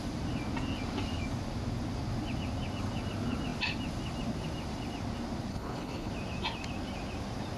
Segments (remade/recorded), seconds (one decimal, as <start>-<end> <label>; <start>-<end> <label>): 0.0-5.5 recorded; 5.5-6.1 remade; 6.1-7.6 recorded